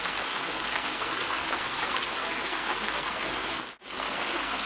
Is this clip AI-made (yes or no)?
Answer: yes